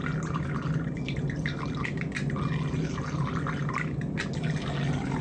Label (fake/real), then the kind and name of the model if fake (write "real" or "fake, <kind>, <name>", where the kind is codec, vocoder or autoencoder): real